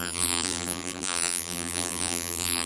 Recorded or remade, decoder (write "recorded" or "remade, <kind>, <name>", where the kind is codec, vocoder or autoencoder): remade, vocoder, BigVGAN v2